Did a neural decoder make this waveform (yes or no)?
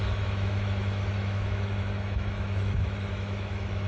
yes